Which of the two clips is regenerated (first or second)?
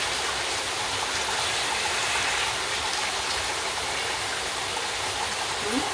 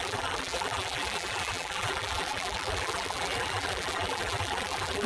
second